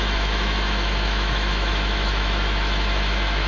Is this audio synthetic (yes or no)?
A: yes